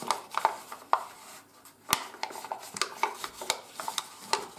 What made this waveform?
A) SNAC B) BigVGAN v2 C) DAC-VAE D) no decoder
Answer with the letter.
D